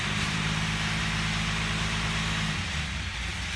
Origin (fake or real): fake